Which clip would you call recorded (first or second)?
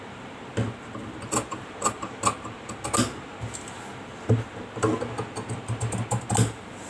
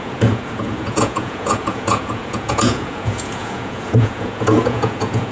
first